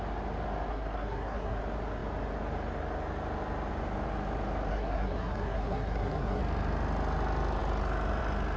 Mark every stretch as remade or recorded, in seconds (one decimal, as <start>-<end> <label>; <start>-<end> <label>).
0.0-0.7 recorded; 0.7-1.6 remade; 1.6-4.7 recorded; 4.7-6.4 remade; 6.4-8.6 recorded

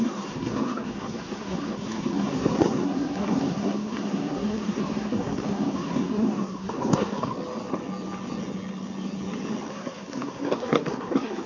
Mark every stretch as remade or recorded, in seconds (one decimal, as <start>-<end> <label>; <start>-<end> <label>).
0.0-7.3 remade; 7.3-9.7 recorded; 9.7-11.5 remade

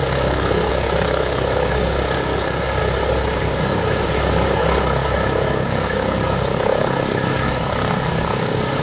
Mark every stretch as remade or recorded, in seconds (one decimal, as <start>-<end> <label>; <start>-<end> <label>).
0.0-2.8 remade; 2.8-3.4 recorded; 3.4-8.8 remade

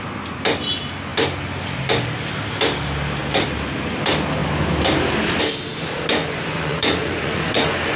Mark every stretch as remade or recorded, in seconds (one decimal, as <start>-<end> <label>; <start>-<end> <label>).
0.0-6.2 recorded; 6.2-8.0 remade

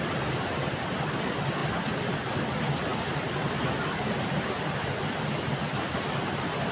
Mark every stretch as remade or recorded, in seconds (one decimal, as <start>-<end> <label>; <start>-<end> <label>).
0.0-6.7 recorded